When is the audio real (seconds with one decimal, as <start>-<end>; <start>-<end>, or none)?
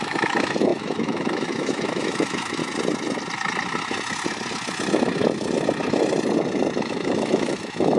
2.6-6.8